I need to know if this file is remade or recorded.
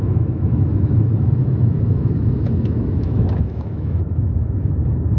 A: remade